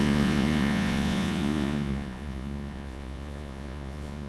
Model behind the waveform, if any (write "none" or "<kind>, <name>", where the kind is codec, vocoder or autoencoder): vocoder, Vocos